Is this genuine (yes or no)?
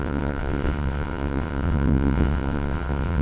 no